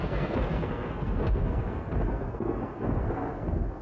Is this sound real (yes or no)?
no